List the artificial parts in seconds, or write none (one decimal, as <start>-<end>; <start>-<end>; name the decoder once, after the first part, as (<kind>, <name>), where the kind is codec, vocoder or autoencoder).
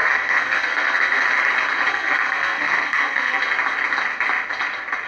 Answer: 0.0-1.2 (codec, SNAC); 1.9-3.4